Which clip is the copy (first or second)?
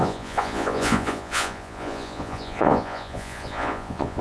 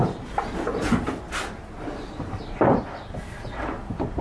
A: first